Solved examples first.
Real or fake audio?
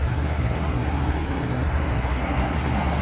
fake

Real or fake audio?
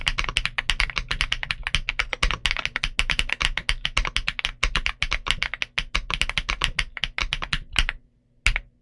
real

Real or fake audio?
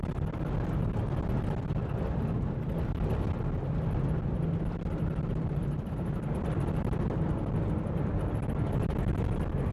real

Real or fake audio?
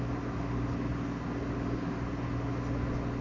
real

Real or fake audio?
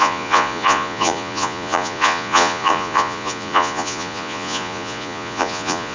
fake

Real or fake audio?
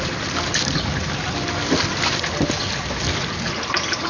real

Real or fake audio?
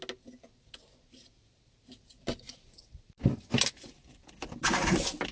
real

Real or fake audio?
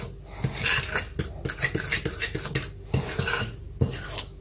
real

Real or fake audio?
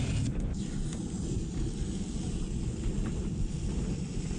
real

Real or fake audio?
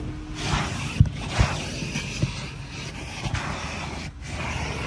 real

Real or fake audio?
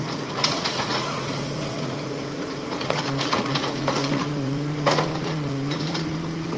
fake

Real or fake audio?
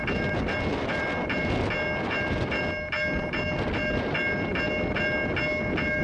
real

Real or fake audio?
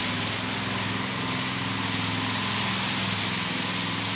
real